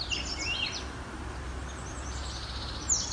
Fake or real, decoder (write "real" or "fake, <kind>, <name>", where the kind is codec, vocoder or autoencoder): real